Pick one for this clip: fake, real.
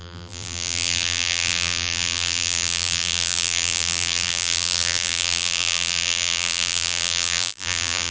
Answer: fake